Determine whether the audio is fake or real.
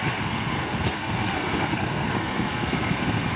fake